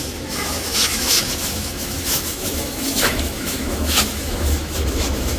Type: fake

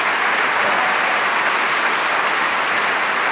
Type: real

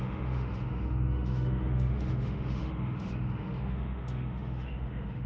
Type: fake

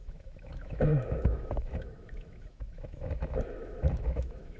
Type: fake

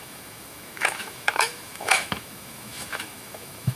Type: fake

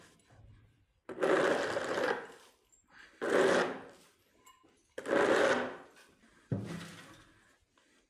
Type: real